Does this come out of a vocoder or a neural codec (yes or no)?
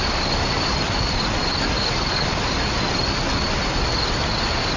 no